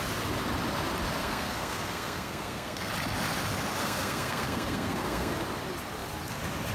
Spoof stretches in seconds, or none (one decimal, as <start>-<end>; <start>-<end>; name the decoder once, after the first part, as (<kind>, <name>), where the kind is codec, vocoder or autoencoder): 1.2-2.9 (codec, SNAC); 3.8-5.3